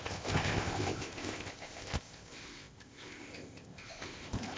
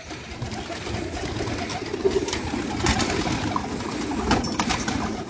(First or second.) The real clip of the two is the second